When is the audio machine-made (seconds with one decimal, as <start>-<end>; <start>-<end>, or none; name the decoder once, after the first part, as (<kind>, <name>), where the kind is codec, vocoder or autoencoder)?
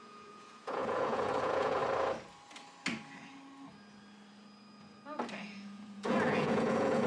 0.0-1.8 (vocoder, Vocos); 5.4-7.1